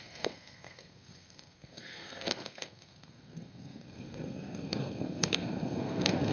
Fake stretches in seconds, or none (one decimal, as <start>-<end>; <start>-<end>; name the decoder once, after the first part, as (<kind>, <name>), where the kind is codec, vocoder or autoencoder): 0.0-6.3 (codec, SNAC)